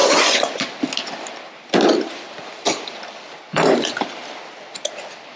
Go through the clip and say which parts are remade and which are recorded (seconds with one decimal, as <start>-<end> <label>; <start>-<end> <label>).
0.0-0.7 remade; 0.7-5.4 recorded